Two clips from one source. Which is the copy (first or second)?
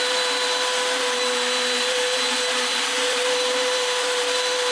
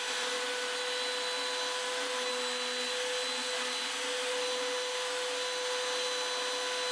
first